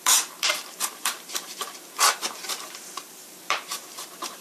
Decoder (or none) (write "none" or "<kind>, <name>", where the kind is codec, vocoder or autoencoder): vocoder, BigVGAN v2